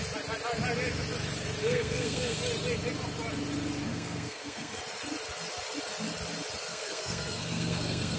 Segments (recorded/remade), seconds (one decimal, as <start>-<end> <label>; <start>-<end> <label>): 0.0-1.6 recorded; 1.6-2.4 remade; 2.4-3.9 recorded; 3.9-4.8 remade; 4.8-6.7 recorded; 6.7-8.2 remade